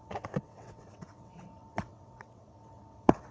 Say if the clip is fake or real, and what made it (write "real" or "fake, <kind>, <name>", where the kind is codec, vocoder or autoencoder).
fake, vocoder, WaveNeXt